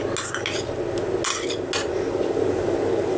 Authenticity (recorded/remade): recorded